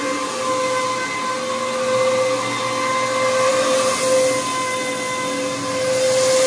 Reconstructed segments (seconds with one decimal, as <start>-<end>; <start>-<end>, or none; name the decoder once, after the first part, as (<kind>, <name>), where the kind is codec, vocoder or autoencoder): none